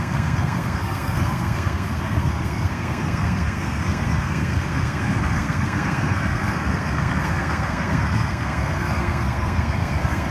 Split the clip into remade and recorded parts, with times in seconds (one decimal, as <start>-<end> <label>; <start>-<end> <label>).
0.0-10.3 remade